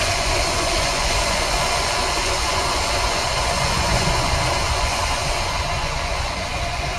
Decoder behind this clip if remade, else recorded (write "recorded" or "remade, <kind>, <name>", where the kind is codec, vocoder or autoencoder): remade, vocoder, Vocos